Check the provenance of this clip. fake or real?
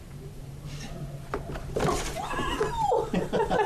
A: fake